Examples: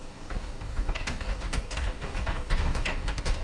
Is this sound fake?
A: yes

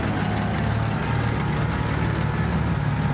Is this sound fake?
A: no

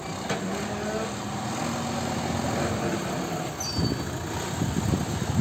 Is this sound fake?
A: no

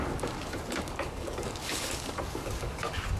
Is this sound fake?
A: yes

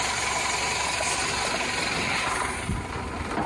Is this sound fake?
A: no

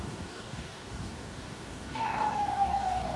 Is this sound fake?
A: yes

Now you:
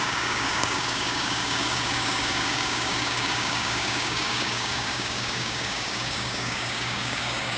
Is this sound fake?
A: yes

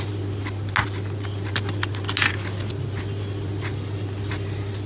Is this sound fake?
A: no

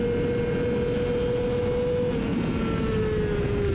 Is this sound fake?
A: no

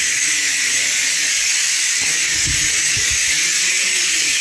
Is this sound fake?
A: yes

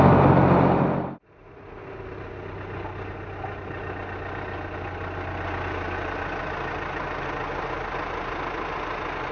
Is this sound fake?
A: no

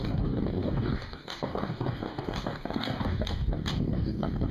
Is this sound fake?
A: yes